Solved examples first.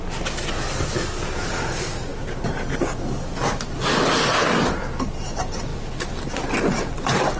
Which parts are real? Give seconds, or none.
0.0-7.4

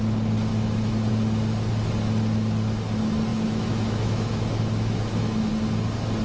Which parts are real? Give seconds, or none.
0.0-0.5; 1.1-3.3; 5.5-6.2

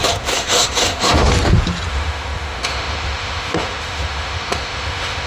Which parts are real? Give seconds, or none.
1.3-1.9

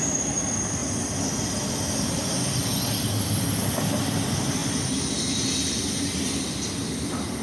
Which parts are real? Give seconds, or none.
0.0-7.4

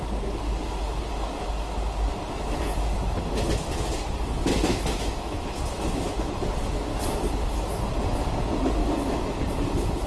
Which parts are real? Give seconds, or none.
0.0-4.5; 5.6-8.8; 9.4-10.1

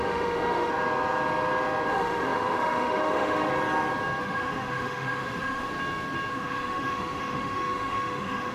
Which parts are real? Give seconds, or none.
0.7-1.9; 3.5-4.2; 5.7-6.3

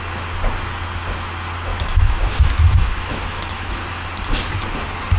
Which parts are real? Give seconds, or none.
0.0-1.7; 3.8-5.2